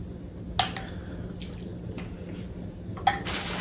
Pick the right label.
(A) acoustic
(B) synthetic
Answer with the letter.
A